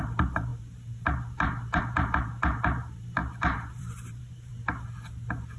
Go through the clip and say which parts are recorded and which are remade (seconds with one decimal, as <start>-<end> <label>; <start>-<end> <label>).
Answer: 0.0-4.5 remade; 4.5-5.6 recorded